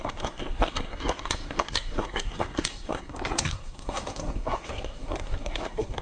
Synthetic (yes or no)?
yes